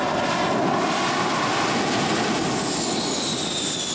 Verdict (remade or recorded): recorded